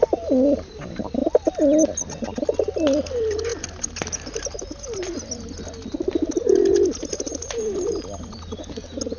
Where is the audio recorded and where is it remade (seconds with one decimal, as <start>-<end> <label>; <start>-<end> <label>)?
0.0-9.2 recorded